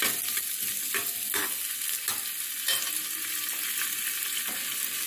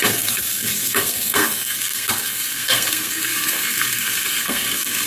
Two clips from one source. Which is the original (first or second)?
first